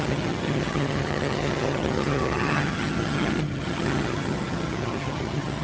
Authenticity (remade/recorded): remade